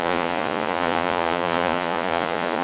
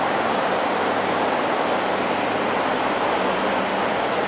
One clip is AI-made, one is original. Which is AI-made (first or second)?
first